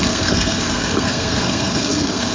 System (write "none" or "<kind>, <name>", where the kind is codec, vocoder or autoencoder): codec, SNAC